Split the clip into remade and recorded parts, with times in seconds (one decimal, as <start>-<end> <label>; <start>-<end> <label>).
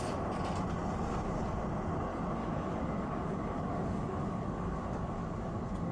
0.0-2.4 recorded; 2.4-5.5 remade; 5.5-5.9 recorded